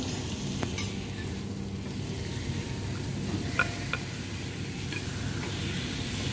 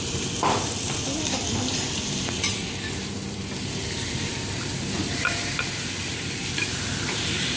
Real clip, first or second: first